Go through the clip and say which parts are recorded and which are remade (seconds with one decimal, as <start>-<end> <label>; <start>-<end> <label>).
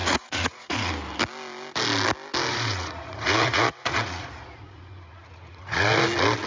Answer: 0.0-0.9 remade; 0.9-2.5 recorded; 2.5-6.0 remade; 6.0-6.5 recorded